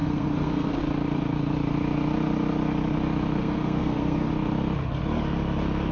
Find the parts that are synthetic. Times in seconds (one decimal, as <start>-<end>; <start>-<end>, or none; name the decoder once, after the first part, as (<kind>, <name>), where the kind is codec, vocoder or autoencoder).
0.0-0.8 (codec, SNAC); 3.4-4.3